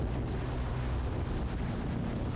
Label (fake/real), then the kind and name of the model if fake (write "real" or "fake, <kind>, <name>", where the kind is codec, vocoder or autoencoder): real